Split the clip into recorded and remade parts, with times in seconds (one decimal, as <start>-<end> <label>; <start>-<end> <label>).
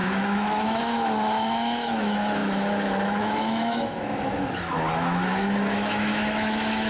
0.0-6.9 remade